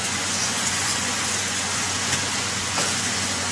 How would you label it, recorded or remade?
remade